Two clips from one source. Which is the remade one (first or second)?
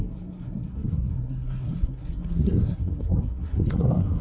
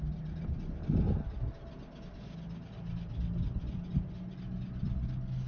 first